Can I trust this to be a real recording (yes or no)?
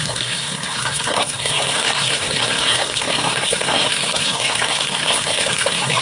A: no